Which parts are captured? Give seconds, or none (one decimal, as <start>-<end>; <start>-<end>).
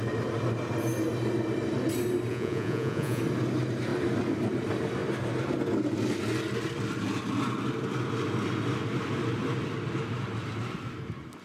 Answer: 0.0-2.3; 3.2-11.4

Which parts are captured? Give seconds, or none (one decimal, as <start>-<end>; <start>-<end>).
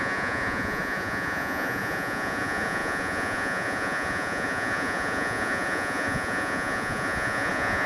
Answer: none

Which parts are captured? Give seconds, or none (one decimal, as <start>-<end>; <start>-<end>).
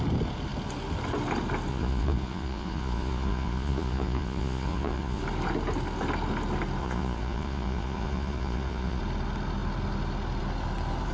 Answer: 0.0-1.7; 5.2-6.8; 9.0-11.1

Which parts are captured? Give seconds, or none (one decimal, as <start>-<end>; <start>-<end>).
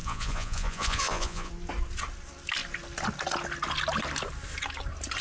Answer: 1.5-5.2